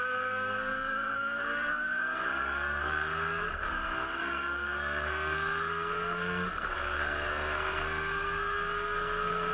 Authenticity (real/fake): fake